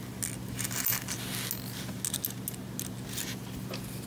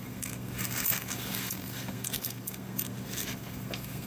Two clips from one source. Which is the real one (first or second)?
first